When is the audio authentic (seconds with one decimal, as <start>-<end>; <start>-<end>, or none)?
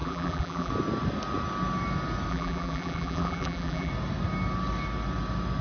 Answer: 0.7-2.3; 3.9-5.6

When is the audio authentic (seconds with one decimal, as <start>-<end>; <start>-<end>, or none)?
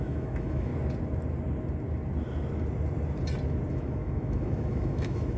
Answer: 0.7-3.7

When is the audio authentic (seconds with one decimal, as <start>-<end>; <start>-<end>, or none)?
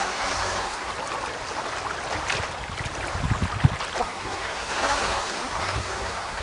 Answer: 0.9-4.0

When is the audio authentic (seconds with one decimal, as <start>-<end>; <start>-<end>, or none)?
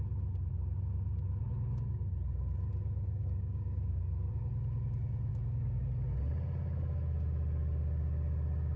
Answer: 0.0-3.1; 4.0-5.3; 5.8-8.8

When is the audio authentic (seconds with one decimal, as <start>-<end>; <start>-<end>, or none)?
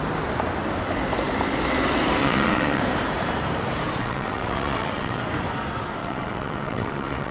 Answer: 0.0-2.2; 2.8-4.0; 5.2-6.0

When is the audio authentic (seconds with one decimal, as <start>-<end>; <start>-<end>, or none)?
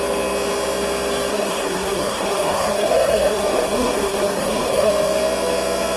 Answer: 0.0-1.3; 4.9-6.0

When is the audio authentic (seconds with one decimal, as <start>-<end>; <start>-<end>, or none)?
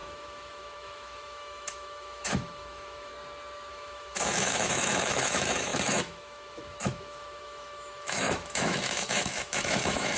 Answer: 3.1-3.7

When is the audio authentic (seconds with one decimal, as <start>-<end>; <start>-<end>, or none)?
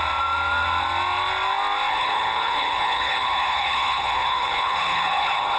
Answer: 0.0-1.9